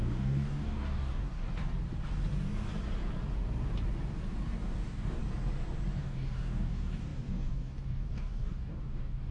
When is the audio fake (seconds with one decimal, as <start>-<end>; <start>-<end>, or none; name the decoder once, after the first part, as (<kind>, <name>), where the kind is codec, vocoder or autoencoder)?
0.0-1.4 (codec, DAC); 4.6-5.2; 6.0-9.3